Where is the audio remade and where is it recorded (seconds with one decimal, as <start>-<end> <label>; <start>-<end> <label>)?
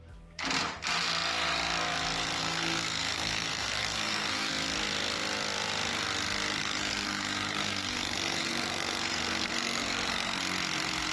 0.0-2.4 recorded; 2.4-4.5 remade; 4.5-6.6 recorded; 6.6-10.4 remade; 10.4-11.1 recorded